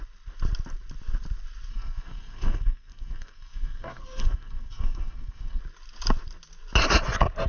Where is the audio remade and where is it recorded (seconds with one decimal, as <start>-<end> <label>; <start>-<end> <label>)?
0.0-1.7 recorded; 1.7-5.6 remade; 5.6-7.5 recorded